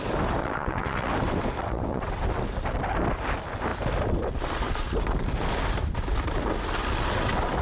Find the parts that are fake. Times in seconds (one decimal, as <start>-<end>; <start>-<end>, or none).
0.4-1.1; 1.6-2.2